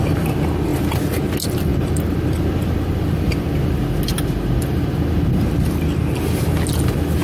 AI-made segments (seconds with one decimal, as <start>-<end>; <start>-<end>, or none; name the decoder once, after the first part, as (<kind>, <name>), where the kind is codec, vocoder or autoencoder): 0.7-1.2 (vocoder, BigVGAN v2); 1.7-5.4